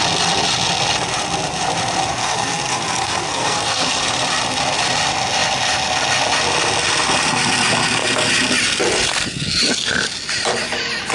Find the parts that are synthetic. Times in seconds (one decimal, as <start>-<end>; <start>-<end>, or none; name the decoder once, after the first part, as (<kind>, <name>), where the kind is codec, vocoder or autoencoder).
2.2-4.0 (codec, SNAC)

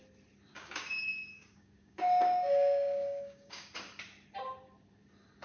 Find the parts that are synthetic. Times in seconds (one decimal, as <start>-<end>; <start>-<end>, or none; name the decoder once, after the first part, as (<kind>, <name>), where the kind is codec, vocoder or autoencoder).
0.5-3.7 (codec, DAC)

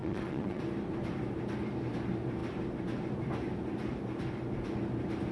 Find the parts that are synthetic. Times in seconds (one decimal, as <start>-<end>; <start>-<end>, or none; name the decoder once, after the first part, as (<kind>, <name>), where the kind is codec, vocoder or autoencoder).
0.0-0.6 (vocoder, Vocos)

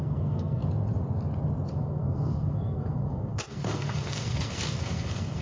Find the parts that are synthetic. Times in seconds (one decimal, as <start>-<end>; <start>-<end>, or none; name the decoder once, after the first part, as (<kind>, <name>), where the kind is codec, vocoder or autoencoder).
0.0-0.6 (codec, SNAC); 1.7-5.4

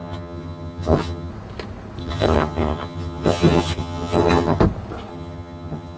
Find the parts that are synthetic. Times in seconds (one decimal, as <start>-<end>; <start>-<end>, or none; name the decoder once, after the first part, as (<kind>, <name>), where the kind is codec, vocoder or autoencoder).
0.0-1.3 (vocoder, HiFi-GAN); 2.0-4.6; 5.1-6.0

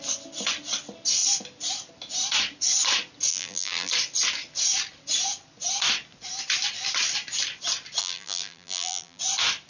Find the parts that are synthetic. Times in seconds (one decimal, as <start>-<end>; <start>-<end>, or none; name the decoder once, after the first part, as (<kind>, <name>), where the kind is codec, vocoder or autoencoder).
3.3-3.9 (vocoder, BigVGAN v2); 8.0-9.2